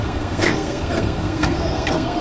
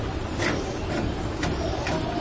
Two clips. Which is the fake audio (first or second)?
first